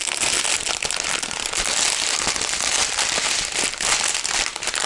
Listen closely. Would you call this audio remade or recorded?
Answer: recorded